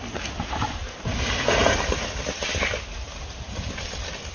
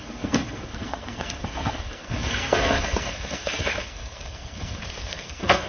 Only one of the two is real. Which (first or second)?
first